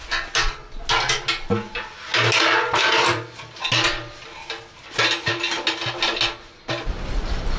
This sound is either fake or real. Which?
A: real